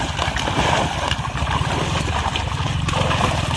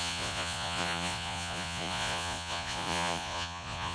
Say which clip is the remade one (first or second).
second